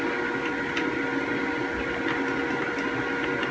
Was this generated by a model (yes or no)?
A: no